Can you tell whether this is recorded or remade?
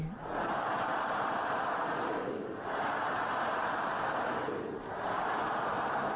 remade